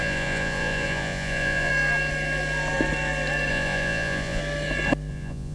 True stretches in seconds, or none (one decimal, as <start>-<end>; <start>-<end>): 1.7-3.5; 4.4-5.1

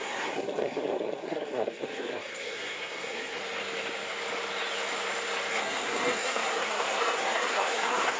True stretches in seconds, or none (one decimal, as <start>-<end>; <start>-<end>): 3.4-5.5

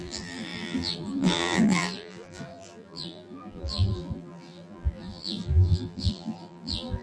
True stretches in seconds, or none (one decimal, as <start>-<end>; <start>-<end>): none

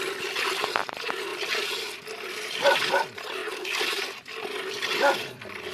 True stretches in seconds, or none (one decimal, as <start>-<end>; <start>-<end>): none